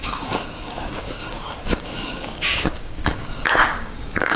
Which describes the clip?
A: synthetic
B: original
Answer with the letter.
A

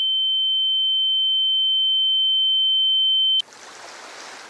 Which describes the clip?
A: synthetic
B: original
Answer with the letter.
B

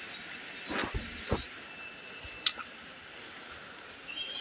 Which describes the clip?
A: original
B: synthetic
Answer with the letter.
A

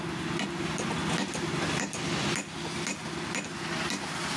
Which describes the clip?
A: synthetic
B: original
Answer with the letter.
B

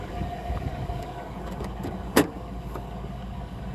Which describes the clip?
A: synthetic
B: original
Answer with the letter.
A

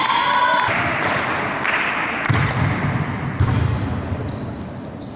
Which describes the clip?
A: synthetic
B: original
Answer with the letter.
B